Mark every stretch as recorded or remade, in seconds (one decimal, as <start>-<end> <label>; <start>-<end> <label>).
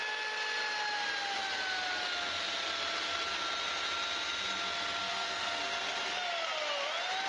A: 0.0-5.0 recorded; 5.0-5.6 remade; 5.6-7.3 recorded